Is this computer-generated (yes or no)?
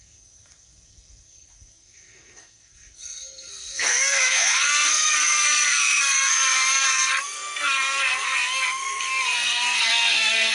yes